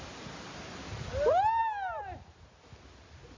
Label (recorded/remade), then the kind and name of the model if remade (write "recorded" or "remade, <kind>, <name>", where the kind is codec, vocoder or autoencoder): recorded